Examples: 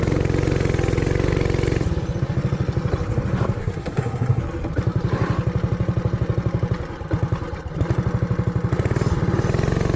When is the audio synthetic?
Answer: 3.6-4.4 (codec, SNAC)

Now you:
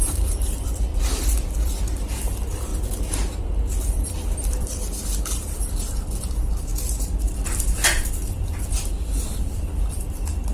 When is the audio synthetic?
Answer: 0.0-6.7 (vocoder, BigVGAN v2); 7.3-10.5